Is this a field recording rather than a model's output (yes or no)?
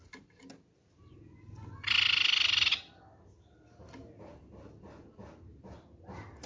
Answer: yes